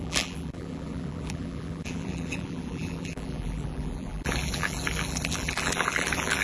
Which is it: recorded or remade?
remade